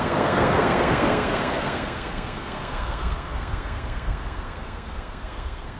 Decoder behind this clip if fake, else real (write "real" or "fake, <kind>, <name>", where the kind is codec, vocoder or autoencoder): fake, codec, SNAC